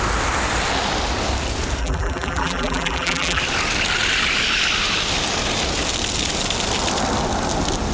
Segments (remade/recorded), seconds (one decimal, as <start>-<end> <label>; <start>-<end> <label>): 0.0-1.8 recorded; 1.8-3.4 remade; 3.4-7.9 recorded